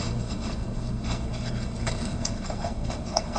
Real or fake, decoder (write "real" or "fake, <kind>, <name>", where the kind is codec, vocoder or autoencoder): fake, codec, SNAC